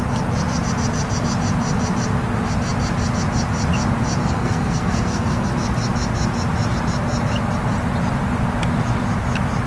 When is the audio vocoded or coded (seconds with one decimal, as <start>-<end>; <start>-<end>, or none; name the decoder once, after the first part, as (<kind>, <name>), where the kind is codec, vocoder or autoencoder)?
4.2-5.5 (codec, SNAC)

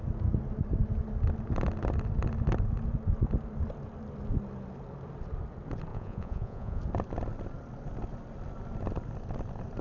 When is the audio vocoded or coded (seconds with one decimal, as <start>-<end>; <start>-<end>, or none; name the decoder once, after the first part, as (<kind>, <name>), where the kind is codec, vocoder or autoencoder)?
5.9-6.8 (vocoder, Vocos)

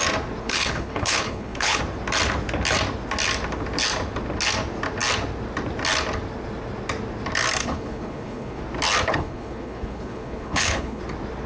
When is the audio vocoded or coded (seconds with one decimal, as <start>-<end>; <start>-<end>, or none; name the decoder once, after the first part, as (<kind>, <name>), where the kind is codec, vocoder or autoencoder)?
0.4-1.8 (codec, HILCodec); 7.6-8.6; 9.1-11.0

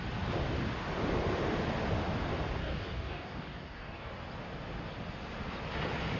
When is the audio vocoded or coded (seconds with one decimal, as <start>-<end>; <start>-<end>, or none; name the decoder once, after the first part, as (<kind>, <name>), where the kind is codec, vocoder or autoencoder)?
2.6-4.1 (codec, DAC)

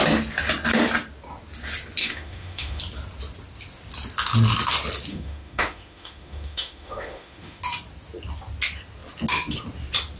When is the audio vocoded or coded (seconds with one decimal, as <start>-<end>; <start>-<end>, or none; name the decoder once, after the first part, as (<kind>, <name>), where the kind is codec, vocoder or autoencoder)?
2.0-2.8 (autoencoder, DAC-VAE); 5.1-7.6

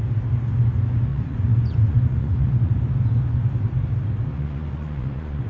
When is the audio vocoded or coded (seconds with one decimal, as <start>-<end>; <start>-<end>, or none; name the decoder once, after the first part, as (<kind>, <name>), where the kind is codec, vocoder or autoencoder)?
1.1-2.7 (vocoder, Vocos); 4.3-5.5

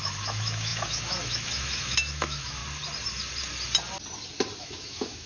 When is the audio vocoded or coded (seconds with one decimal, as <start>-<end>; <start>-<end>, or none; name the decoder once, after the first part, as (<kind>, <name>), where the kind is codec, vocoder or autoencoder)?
0.0-2.6 (autoencoder, DAC-VAE); 4.6-5.3

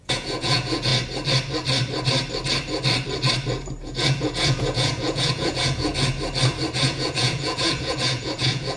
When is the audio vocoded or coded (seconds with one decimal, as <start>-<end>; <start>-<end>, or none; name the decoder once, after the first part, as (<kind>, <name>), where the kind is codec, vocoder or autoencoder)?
0.0-0.9 (vocoder, Vocos); 3.8-5.9; 6.8-8.8